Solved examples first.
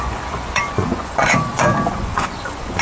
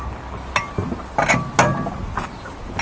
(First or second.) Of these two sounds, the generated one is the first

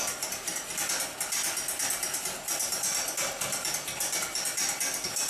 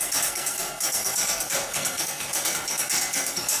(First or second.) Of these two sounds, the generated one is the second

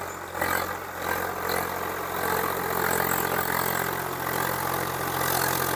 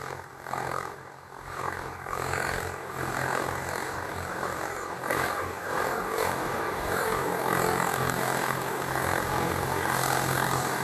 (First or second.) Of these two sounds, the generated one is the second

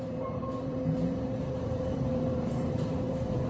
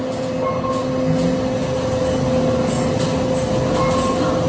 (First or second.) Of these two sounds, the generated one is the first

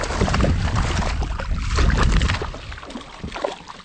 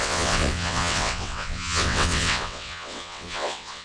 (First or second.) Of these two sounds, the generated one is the second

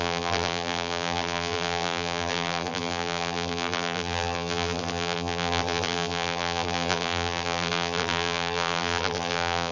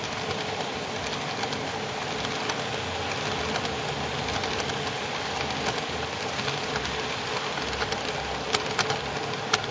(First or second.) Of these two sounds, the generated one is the first